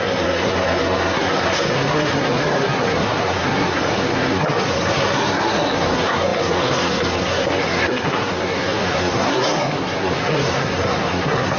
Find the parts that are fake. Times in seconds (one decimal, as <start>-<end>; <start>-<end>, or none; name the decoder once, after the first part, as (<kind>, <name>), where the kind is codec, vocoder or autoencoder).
0.0-11.6 (codec, SNAC)